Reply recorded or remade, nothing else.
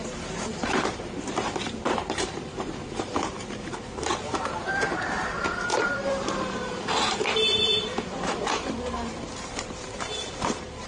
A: remade